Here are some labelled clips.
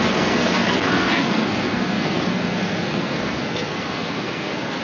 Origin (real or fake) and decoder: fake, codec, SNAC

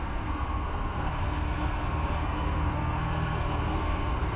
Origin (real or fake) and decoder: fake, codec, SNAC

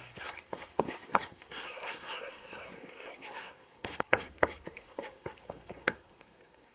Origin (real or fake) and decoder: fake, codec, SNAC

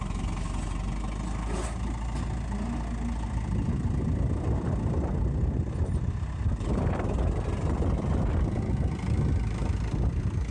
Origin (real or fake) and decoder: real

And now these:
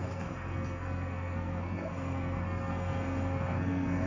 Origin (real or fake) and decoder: fake, codec, SNAC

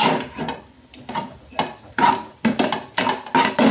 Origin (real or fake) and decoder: real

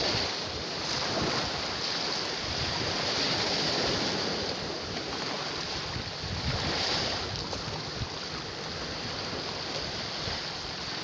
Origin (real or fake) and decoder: real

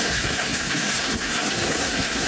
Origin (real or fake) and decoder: fake, codec, SNAC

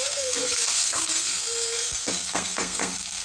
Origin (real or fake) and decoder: fake, codec, SNAC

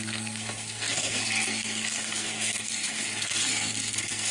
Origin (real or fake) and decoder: fake, codec, SNAC